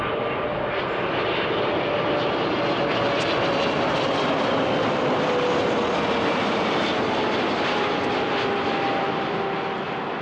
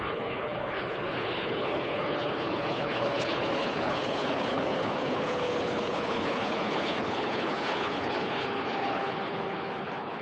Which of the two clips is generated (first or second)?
second